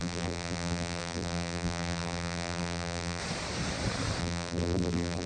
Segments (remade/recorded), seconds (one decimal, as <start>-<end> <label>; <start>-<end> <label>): 0.0-3.2 remade; 3.2-4.2 recorded; 4.2-5.3 remade